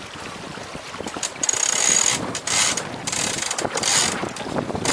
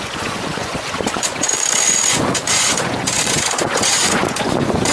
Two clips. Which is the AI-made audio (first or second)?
second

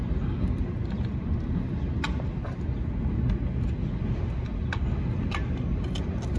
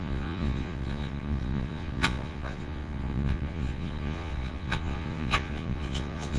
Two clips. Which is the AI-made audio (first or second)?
second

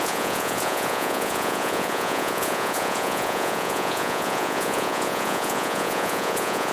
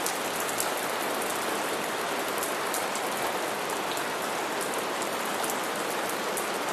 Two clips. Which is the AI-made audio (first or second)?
first